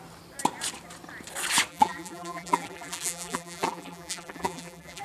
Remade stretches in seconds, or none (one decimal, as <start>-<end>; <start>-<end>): 1.7-5.0